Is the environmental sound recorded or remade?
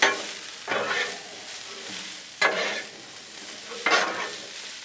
recorded